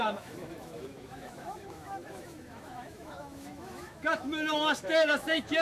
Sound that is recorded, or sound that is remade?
remade